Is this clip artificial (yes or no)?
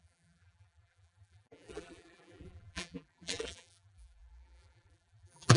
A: yes